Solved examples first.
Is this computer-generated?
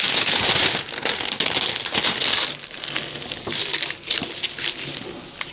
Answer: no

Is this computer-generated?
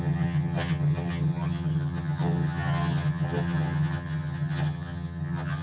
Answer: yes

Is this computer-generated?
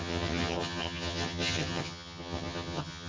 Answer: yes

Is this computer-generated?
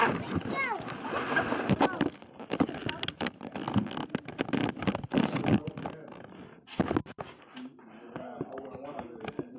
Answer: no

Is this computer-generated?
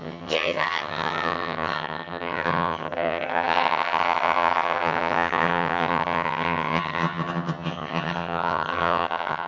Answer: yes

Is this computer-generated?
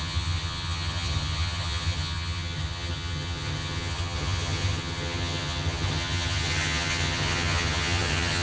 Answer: yes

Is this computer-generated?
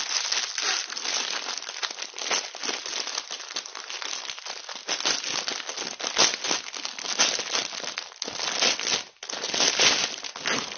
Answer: no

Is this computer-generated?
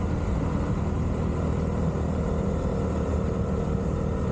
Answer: no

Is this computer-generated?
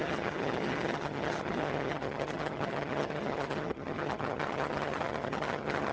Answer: yes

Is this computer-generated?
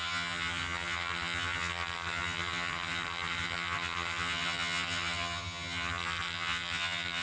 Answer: yes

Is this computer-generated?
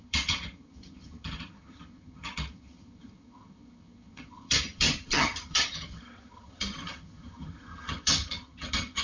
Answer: yes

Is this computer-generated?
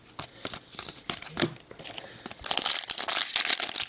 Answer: no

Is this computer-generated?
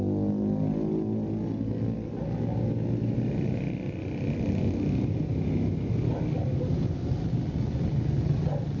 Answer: no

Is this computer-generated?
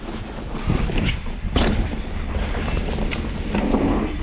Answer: no